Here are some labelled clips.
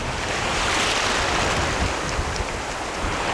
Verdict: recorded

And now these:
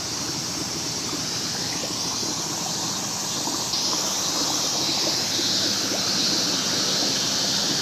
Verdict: recorded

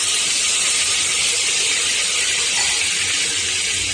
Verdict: recorded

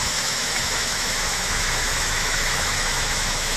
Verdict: remade